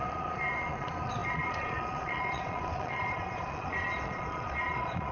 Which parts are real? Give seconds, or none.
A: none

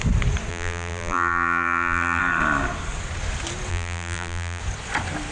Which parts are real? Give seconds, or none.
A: 0.0-0.5; 2.2-3.7; 4.6-5.3

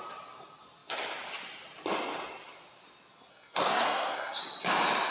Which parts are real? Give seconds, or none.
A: 0.0-3.3; 4.4-5.1

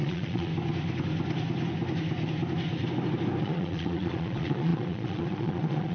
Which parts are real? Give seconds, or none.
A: 0.5-3.4